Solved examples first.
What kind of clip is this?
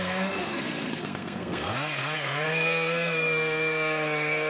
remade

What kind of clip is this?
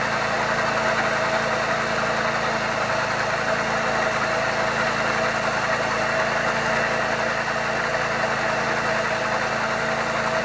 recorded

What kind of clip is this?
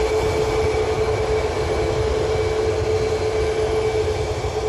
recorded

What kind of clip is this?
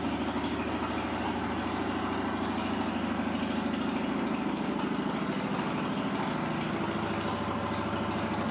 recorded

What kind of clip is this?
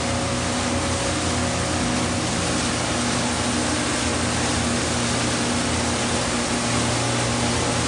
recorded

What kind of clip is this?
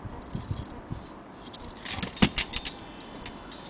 recorded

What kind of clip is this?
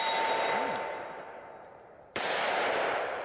remade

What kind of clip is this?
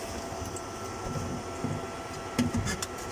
recorded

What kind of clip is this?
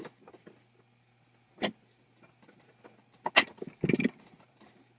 recorded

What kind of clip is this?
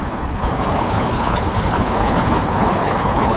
remade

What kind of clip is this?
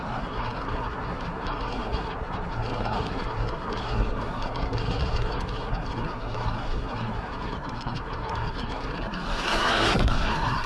remade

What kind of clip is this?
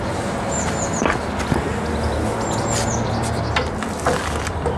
recorded